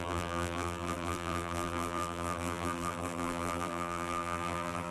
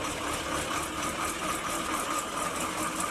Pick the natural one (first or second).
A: second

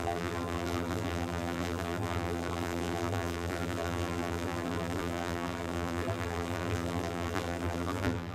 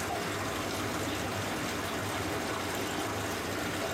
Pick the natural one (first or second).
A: second